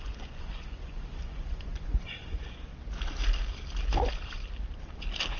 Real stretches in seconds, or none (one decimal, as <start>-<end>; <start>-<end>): 2.7-5.4